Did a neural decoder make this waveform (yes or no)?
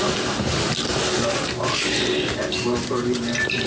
no